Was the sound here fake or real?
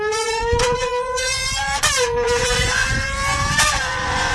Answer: fake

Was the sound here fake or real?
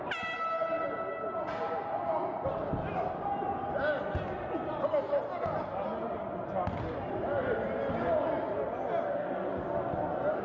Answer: real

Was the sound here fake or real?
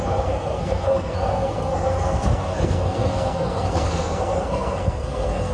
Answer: fake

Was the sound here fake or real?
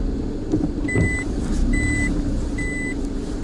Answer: real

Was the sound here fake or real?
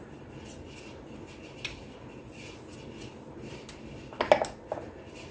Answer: real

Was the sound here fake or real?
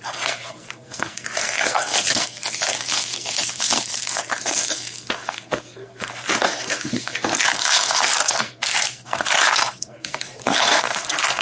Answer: fake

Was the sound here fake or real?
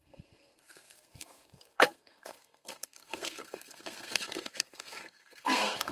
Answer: fake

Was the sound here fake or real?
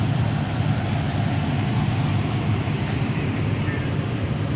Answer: real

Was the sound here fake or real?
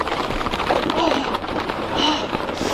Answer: fake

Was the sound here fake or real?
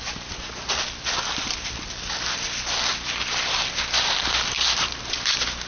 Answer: real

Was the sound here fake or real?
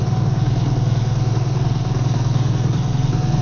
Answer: fake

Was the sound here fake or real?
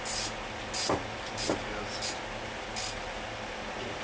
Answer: real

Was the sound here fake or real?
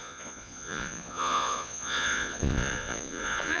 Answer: fake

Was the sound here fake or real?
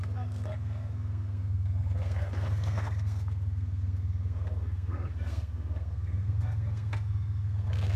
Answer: fake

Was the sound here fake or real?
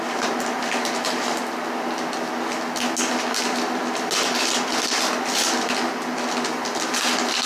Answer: real